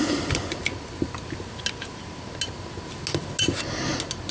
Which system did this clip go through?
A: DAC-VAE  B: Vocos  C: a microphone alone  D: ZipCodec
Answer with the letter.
C